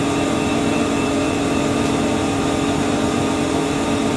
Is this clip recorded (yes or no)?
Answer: no